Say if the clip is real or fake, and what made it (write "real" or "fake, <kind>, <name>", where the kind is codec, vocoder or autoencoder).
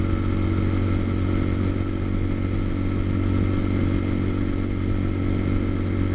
real